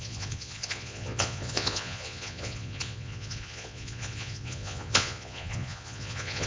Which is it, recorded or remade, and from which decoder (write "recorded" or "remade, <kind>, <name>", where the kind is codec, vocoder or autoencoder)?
remade, vocoder, Vocos